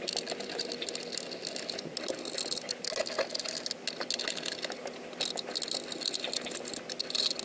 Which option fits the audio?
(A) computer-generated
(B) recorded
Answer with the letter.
B